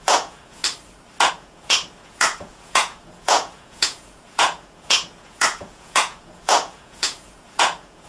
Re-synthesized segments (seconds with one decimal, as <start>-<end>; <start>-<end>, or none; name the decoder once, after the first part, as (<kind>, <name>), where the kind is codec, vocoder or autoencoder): 0.0-0.6 (vocoder, Vocos); 1.3-8.1